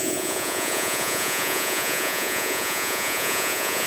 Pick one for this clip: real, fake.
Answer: fake